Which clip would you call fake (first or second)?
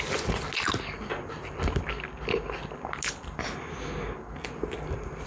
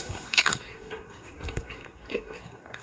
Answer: second